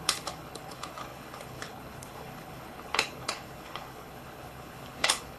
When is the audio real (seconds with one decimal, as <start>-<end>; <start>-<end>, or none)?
none